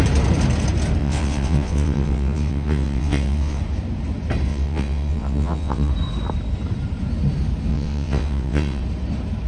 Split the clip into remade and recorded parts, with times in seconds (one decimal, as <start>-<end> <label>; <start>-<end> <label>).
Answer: 0.0-1.0 recorded; 1.0-3.6 remade; 3.6-4.5 recorded; 4.5-5.9 remade; 5.9-7.7 recorded; 7.7-8.8 remade; 8.8-9.5 recorded